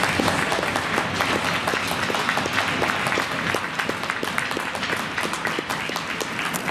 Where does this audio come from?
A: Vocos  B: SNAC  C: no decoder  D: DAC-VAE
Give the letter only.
C